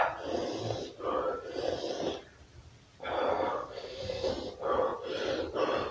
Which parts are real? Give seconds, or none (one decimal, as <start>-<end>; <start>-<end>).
0.0-3.3; 4.3-5.9